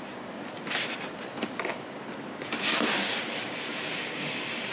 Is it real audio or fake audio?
real